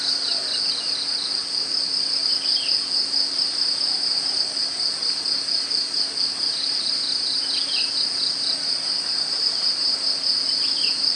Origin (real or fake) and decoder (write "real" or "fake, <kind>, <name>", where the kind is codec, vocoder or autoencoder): real